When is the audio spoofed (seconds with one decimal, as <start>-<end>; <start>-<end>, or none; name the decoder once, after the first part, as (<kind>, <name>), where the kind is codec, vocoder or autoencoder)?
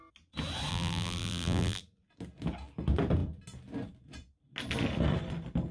0.7-1.8 (vocoder, BigVGAN v2)